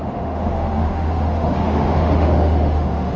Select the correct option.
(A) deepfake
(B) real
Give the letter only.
A